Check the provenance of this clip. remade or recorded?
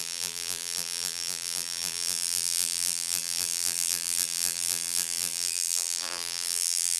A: remade